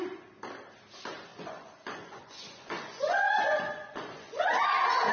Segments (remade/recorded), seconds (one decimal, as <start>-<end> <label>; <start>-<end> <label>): 0.0-1.3 recorded; 1.3-4.4 remade; 4.4-5.1 recorded